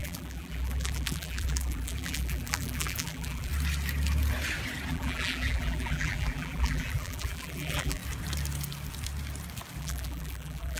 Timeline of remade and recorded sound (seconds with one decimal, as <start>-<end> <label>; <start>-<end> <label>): 0.0-3.5 remade; 3.5-4.9 recorded; 4.9-8.0 remade; 8.0-9.8 recorded; 9.8-10.8 remade